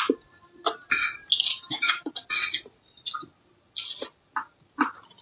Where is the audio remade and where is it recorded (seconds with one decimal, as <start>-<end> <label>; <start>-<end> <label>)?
0.0-1.5 recorded; 1.5-2.1 remade; 2.1-5.2 recorded